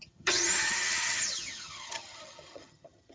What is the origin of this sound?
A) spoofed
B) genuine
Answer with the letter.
A